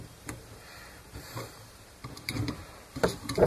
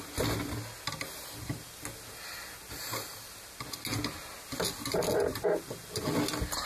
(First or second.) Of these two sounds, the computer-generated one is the first